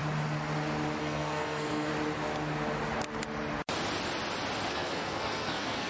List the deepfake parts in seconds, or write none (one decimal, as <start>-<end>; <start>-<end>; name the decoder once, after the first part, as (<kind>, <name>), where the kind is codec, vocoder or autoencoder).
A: 1.0-1.9 (codec, SNAC); 4.7-5.9